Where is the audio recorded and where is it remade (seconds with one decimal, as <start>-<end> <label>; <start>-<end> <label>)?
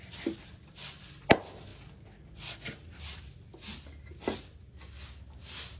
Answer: 0.0-5.8 recorded